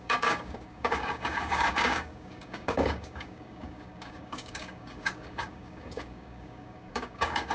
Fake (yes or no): yes